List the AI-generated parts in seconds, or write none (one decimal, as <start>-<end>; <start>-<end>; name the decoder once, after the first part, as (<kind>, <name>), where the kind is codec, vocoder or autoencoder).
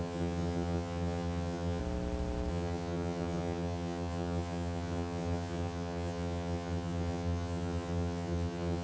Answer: 0.0-1.8 (vocoder, HiFi-GAN); 2.5-8.8